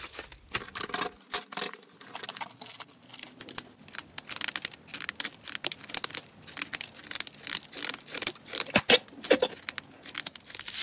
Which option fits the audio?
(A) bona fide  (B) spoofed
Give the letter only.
A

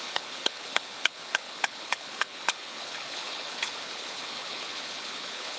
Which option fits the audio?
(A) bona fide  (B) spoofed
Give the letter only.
B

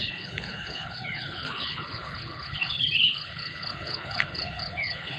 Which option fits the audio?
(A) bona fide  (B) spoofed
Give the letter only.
B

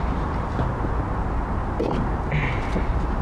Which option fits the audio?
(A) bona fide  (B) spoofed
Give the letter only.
A